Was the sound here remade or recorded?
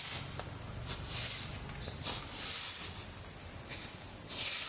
recorded